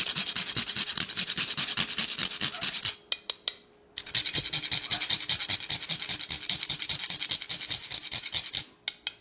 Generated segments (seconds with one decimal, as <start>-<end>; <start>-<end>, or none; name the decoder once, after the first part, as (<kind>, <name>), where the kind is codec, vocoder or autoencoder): none